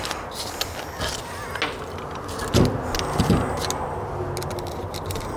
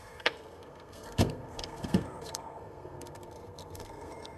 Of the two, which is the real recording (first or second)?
first